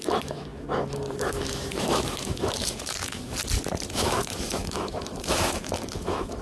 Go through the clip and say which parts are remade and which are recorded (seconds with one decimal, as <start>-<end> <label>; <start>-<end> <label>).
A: 0.0-3.4 remade; 3.4-3.9 recorded; 3.9-6.4 remade

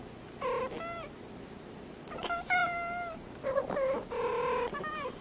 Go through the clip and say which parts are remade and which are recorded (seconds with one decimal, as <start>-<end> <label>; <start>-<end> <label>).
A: 0.0-5.2 recorded

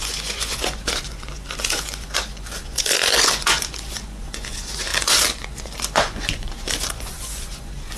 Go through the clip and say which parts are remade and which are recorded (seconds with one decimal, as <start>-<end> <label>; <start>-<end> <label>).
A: 0.0-8.0 remade